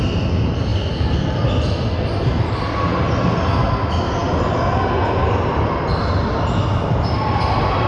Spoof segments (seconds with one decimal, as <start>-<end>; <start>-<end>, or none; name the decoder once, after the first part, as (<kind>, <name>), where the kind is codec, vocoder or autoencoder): none